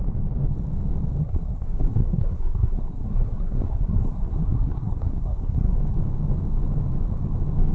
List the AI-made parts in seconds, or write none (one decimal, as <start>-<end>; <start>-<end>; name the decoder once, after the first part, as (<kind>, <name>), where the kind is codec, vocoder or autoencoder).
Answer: 1.2-5.8 (codec, SNAC)